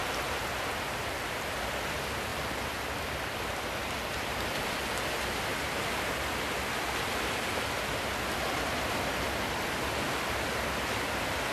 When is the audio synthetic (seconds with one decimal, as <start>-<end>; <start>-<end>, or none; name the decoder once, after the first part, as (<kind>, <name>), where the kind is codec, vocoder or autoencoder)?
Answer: 2.3-3.6 (vocoder, BigVGAN v2)